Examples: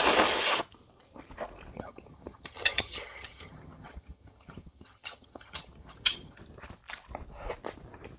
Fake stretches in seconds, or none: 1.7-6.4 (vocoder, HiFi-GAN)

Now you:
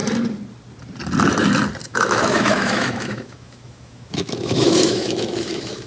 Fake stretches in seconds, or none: 1.8-5.9 (autoencoder, DAC-VAE)